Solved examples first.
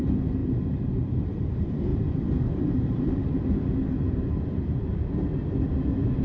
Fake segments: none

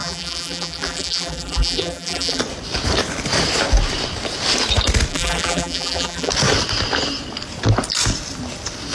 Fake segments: 0.0-2.4 (vocoder, BigVGAN v2); 5.1-6.3

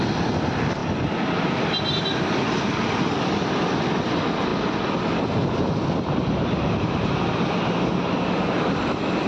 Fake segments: none

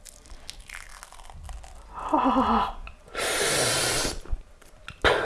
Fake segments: 2.9-4.8 (vocoder, BigVGAN v2)

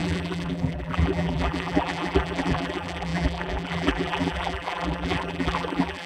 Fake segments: 0.0-6.1 (vocoder, BigVGAN v2)